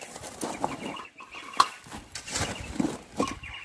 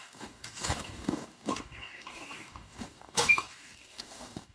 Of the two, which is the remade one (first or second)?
second